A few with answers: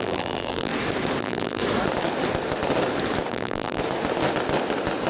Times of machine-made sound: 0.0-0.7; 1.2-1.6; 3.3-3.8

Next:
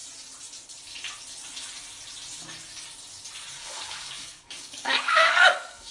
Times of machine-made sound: 3.5-5.9

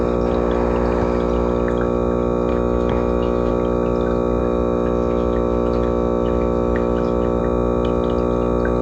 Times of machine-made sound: 2.5-3.5; 4.4-7.4

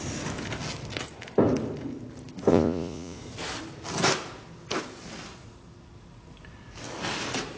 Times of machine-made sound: 2.5-3.2

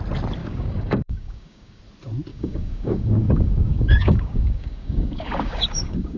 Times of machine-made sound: 0.4-1.8; 2.3-6.2

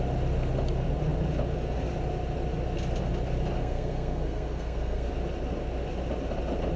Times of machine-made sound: 3.6-5.1

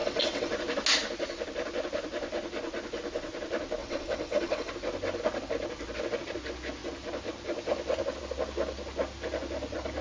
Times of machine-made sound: 0.0-0.5; 3.8-4.7